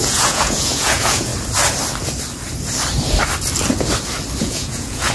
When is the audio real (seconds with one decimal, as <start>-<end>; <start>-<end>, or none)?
1.3-4.4